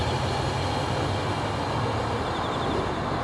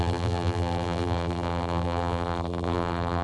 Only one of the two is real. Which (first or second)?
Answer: first